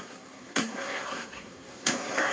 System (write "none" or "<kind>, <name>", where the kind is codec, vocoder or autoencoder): codec, SNAC